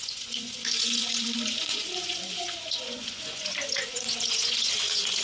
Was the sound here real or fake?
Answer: fake